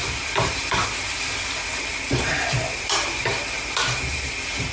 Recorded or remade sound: remade